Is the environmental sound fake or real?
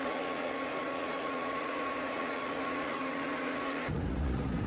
fake